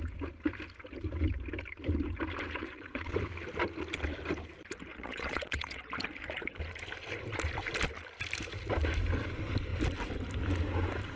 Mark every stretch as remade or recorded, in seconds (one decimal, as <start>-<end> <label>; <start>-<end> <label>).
0.0-2.6 recorded; 2.6-3.2 remade; 3.2-4.9 recorded; 4.9-5.8 remade; 5.8-11.2 recorded